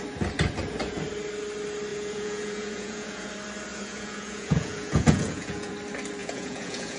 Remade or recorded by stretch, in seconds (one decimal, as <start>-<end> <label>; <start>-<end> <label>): 0.0-1.9 recorded; 1.9-3.3 remade; 3.3-3.7 recorded; 3.7-5.7 remade; 5.7-6.2 recorded; 6.2-7.0 remade